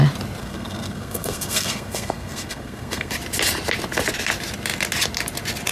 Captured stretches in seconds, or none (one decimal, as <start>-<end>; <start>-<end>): 0.0-0.4; 3.1-5.7